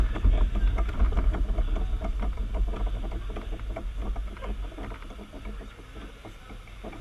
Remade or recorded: recorded